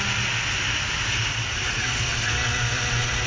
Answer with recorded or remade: recorded